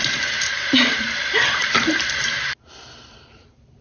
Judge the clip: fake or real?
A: fake